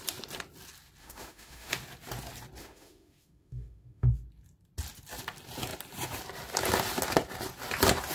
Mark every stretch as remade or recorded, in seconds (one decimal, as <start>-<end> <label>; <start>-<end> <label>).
0.0-1.0 recorded; 1.0-1.7 remade; 1.7-2.6 recorded; 2.6-4.1 remade; 4.1-8.1 recorded